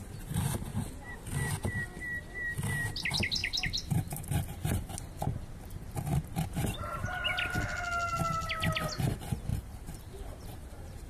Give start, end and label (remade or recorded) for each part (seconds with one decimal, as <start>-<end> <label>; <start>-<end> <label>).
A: 0.0-3.4 recorded; 3.4-4.9 remade; 4.9-9.5 recorded; 9.5-11.1 remade